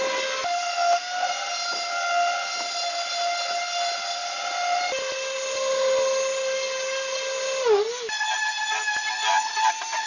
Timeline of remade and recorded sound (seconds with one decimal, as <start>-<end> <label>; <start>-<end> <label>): 0.0-10.1 recorded